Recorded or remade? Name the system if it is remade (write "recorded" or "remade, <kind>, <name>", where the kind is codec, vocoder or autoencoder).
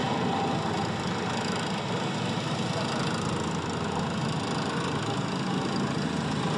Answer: recorded